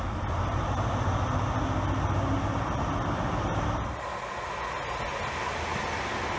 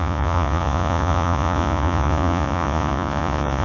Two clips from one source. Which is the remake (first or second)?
second